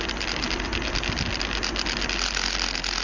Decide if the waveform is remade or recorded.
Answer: recorded